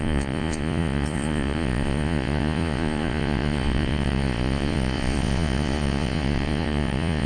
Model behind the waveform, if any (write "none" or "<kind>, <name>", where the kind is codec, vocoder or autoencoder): vocoder, Vocos